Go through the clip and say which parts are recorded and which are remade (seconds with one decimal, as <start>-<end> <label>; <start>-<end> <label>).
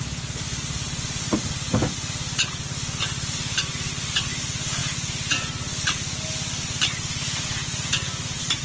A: 0.0-8.6 recorded